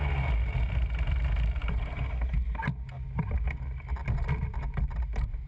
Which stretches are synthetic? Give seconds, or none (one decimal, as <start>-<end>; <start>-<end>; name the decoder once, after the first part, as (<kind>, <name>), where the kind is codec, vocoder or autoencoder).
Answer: none

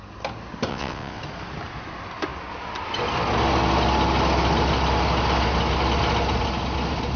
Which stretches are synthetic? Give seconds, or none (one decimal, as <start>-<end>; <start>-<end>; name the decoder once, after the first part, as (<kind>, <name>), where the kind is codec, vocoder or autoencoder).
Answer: 0.7-1.2 (vocoder, WaveNeXt)

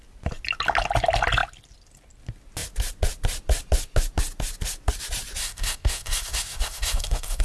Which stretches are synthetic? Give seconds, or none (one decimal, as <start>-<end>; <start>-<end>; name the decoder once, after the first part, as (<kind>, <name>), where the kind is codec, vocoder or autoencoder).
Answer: 5.4-7.4 (codec, SNAC)

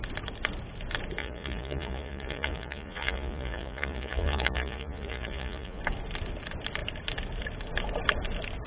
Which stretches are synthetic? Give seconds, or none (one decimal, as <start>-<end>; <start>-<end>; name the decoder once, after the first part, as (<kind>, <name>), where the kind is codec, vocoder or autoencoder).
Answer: 1.2-5.8 (vocoder, Vocos)

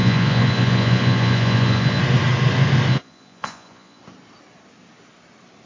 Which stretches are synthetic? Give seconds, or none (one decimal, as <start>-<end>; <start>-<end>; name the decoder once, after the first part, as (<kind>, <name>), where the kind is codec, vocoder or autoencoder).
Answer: 0.0-2.0 (vocoder, Vocos); 2.9-4.0

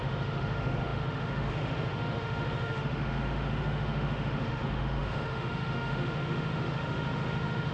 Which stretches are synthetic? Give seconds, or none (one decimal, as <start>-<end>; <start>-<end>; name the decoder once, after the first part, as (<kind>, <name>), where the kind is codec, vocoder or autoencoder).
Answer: 0.0-7.7 (autoencoder, DAC-VAE)

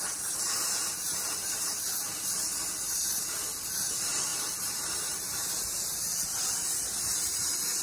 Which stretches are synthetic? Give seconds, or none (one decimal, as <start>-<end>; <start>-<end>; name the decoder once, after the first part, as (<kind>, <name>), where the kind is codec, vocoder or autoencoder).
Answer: 0.0-7.8 (vocoder, BigVGAN v2)